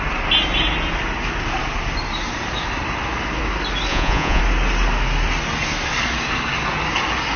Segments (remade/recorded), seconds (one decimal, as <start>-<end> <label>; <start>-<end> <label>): 0.0-3.9 recorded; 3.9-4.4 remade; 4.4-7.4 recorded